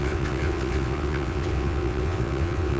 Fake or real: fake